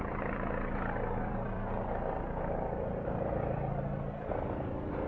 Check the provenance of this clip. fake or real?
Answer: fake